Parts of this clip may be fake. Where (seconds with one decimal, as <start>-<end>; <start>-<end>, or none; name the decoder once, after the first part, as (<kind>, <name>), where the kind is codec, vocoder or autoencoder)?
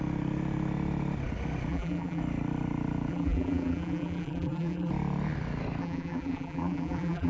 1.7-2.2 (vocoder, BigVGAN v2); 3.1-4.9; 5.8-7.3